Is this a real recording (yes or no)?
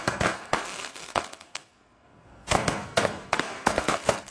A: no